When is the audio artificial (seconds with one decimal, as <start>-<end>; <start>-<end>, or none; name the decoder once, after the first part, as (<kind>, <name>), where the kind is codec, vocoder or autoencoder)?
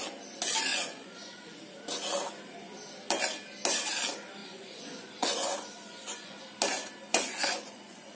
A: 0.7-1.6 (vocoder, Vocos); 4.4-6.4; 7.1-8.1